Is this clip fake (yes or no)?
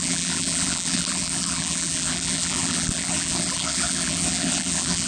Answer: yes